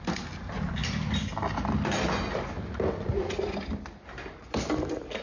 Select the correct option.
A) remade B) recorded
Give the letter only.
B